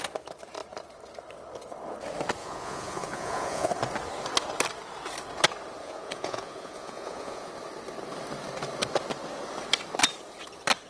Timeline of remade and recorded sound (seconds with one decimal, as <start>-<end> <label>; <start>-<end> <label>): 0.0-2.4 recorded; 2.4-3.7 remade; 3.7-5.8 recorded; 5.8-7.5 remade; 7.5-10.9 recorded